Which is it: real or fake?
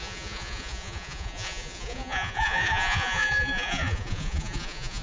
fake